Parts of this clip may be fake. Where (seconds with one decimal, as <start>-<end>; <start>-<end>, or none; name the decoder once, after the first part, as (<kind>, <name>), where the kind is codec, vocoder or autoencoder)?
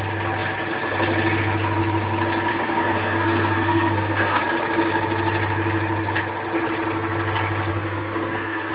2.5-4.4 (codec, SNAC); 7.7-8.7